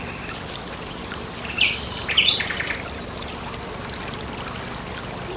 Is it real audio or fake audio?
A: real